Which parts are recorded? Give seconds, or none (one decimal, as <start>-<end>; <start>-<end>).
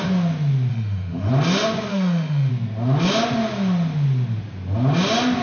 0.0-0.7; 1.3-1.9; 2.5-5.4